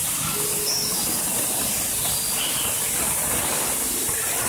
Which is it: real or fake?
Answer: real